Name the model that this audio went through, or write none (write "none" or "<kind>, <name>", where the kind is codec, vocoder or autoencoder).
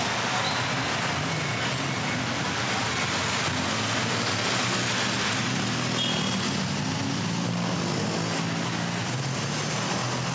none